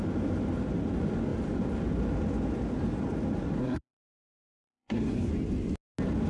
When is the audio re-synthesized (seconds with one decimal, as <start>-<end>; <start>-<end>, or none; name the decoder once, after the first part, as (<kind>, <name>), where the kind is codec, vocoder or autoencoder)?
3.6-5.3 (codec, SNAC)